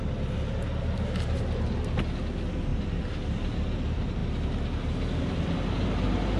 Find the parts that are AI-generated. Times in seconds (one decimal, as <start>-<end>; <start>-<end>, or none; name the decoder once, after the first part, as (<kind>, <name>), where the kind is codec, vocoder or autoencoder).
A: none